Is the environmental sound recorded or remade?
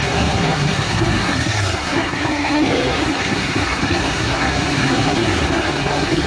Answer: remade